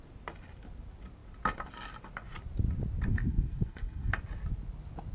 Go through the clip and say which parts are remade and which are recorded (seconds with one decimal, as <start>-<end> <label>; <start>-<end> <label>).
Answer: 0.0-3.1 recorded; 3.1-4.1 remade; 4.1-5.1 recorded